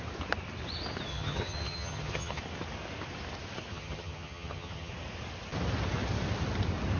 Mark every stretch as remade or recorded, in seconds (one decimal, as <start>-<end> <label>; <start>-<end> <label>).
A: 0.0-1.1 recorded; 1.1-2.4 remade; 2.4-3.7 recorded; 3.7-4.9 remade; 4.9-7.0 recorded